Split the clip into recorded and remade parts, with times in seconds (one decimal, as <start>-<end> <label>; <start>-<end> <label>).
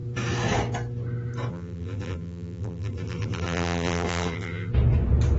0.0-1.5 recorded; 1.5-4.7 remade; 4.7-5.4 recorded